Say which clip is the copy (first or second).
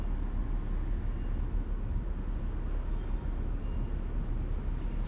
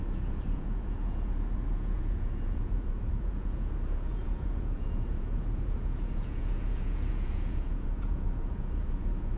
second